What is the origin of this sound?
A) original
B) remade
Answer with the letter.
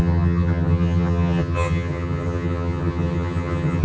B